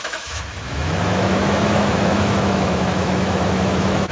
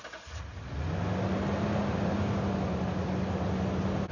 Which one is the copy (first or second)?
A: first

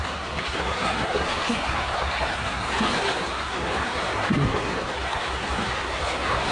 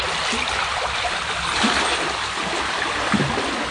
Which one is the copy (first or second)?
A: first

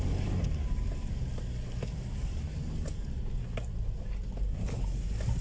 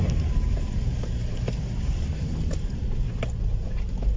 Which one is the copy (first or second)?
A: second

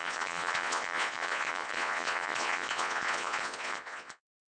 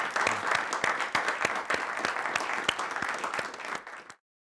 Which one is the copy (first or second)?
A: first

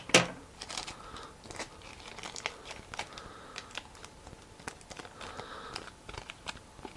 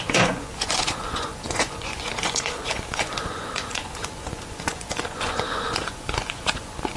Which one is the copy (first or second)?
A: second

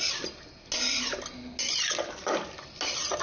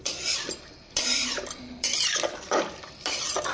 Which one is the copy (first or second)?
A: second